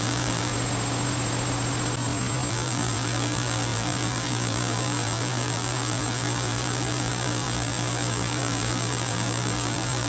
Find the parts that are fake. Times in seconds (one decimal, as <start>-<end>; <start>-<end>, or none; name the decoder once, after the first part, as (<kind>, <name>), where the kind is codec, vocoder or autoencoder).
0.0-0.5 (vocoder, BigVGAN v2); 2.5-10.1